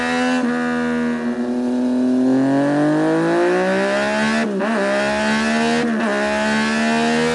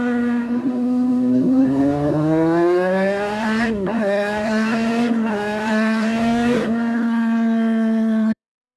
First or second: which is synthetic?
second